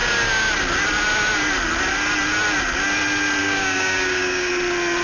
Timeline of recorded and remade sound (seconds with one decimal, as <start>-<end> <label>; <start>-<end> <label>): 0.0-3.4 recorded; 3.4-4.5 remade; 4.5-5.0 recorded